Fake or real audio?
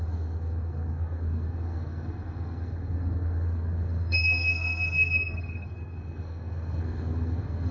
fake